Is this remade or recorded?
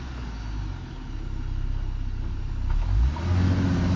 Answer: recorded